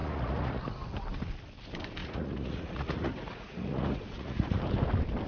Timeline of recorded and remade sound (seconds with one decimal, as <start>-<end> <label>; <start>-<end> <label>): 0.0-0.6 remade; 0.6-2.0 recorded; 2.0-4.6 remade; 4.6-5.3 recorded

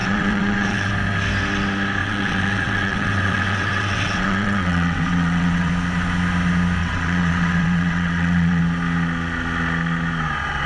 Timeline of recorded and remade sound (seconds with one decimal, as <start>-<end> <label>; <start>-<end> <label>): 0.0-0.9 remade; 0.9-2.0 recorded; 2.0-5.7 remade; 5.7-6.8 recorded; 6.8-8.6 remade; 8.6-10.7 recorded

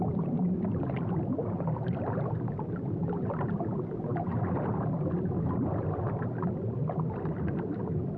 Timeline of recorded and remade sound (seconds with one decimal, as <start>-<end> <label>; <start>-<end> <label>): 0.0-8.2 recorded

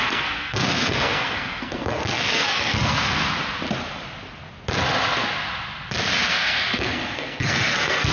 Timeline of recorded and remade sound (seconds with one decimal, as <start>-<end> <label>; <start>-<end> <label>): 0.0-3.2 remade; 3.2-6.2 recorded; 6.2-8.1 remade

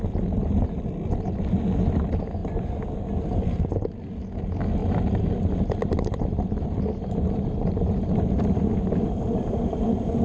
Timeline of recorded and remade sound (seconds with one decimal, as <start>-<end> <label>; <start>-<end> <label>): 0.0-10.2 recorded

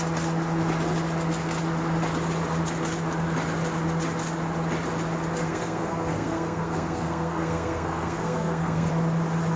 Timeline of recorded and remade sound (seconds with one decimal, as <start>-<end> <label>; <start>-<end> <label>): 0.0-5.4 recorded; 5.4-8.9 remade; 8.9-9.6 recorded